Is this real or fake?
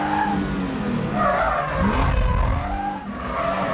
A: real